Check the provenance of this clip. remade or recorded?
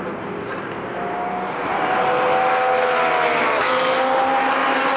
recorded